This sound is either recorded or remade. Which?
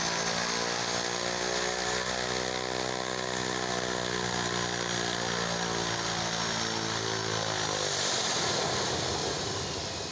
recorded